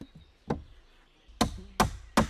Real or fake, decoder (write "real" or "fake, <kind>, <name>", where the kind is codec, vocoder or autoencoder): real